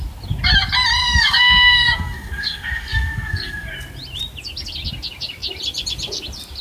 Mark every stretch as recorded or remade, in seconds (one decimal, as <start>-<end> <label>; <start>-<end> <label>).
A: 0.0-1.0 recorded; 1.0-3.7 remade; 3.7-6.6 recorded